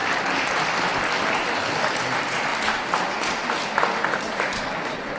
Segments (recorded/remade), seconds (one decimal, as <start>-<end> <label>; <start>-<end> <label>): 0.0-5.2 recorded